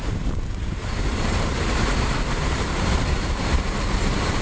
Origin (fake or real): fake